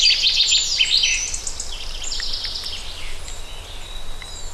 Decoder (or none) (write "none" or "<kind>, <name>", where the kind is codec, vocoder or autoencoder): none